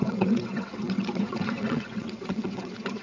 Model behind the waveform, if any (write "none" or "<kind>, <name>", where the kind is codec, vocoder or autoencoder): vocoder, WaveNeXt